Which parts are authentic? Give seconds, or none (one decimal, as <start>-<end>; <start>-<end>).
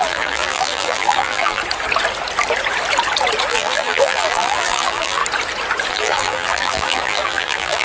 1.6-3.5; 5.2-5.9